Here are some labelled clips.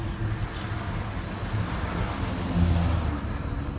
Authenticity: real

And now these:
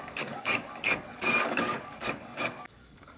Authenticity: fake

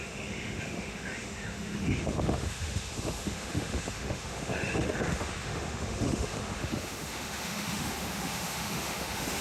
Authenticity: fake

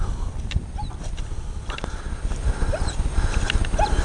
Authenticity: real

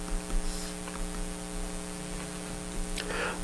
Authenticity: real